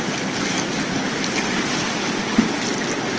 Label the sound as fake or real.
real